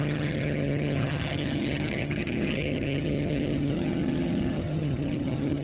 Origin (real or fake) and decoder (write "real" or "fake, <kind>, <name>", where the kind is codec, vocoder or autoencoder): fake, vocoder, HiFi-GAN